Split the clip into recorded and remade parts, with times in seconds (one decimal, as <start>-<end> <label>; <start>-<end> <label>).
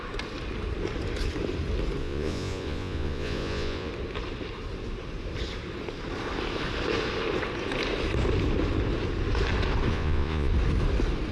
0.0-2.0 recorded; 2.0-3.9 remade; 3.9-9.9 recorded; 9.9-10.5 remade; 10.5-11.3 recorded